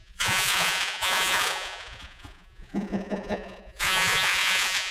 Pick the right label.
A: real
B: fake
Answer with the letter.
B